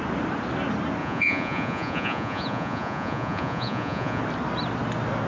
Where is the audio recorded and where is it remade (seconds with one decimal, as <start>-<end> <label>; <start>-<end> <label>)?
0.0-1.0 recorded; 1.0-4.2 remade; 4.2-5.3 recorded